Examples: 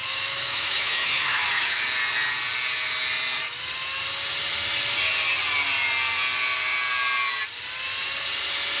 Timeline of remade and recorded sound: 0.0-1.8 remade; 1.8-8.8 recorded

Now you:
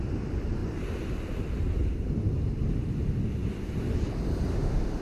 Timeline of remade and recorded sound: 0.0-4.5 recorded; 4.5-5.0 remade

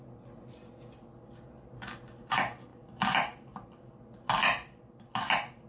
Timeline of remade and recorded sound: 0.0-2.7 recorded; 2.7-4.0 remade; 4.0-5.7 recorded

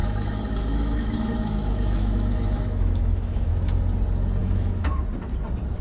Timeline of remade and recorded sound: 0.0-3.5 remade; 3.5-4.4 recorded; 4.4-4.9 remade; 4.9-5.8 recorded